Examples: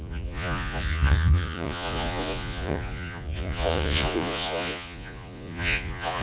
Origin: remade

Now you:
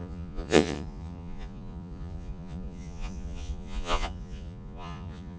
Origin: remade